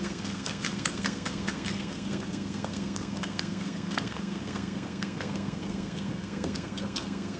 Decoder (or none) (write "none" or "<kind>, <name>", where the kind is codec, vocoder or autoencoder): codec, SNAC